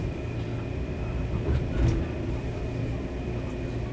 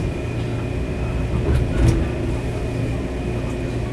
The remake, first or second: first